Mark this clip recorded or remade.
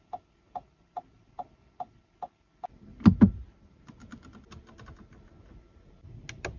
recorded